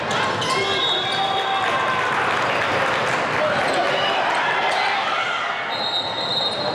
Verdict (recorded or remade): recorded